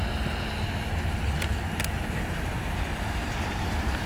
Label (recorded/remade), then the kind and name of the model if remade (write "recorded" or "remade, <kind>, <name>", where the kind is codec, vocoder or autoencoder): recorded